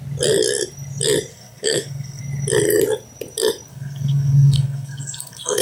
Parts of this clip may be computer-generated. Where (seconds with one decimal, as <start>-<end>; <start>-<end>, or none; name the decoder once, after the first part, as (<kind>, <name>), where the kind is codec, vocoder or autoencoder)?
1.3-2.2 (codec, SNAC); 3.7-5.6